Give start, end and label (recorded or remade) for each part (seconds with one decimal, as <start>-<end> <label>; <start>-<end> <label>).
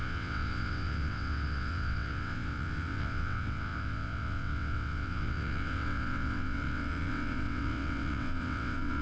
0.0-9.0 remade